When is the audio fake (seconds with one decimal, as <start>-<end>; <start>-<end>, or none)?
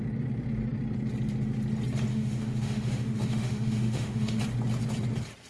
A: 2.1-4.4